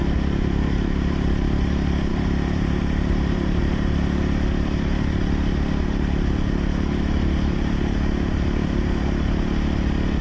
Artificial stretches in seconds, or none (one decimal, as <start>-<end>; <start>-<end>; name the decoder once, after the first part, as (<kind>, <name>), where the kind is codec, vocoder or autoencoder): 2.1-3.6 (vocoder, BigVGAN v2); 8.6-9.1

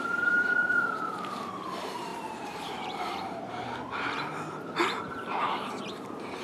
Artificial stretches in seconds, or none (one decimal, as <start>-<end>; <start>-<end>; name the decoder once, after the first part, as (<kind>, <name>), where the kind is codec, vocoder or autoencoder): 0.0-6.4 (vocoder, BigVGAN v2)

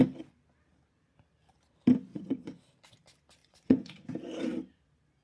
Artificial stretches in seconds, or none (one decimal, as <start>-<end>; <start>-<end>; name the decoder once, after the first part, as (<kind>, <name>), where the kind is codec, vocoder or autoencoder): 2.1-2.6 (vocoder, Vocos); 3.4-4.1

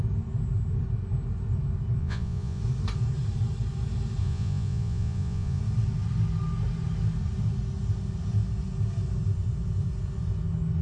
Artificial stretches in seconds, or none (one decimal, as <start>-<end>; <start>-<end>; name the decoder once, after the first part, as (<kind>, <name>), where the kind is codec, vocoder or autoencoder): 2.0-2.6 (vocoder, Vocos); 4.2-5.6

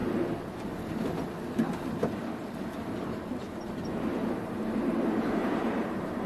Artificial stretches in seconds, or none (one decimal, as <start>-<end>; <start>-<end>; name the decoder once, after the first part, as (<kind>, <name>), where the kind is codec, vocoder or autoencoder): 4.4-6.3 (vocoder, BigVGAN v2)